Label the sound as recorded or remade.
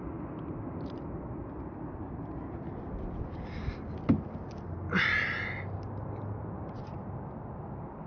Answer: recorded